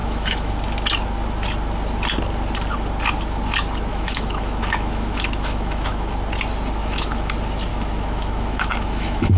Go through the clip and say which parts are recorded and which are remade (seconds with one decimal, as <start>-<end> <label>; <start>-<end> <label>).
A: 0.0-0.5 remade; 0.5-3.9 recorded; 3.9-6.1 remade; 6.1-6.8 recorded; 6.8-7.3 remade; 7.3-7.7 recorded; 7.7-9.4 remade